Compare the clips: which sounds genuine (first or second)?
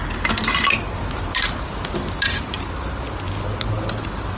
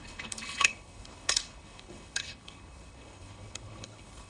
first